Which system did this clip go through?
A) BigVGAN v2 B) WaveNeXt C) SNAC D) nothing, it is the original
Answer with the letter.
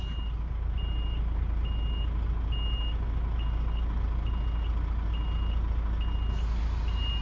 D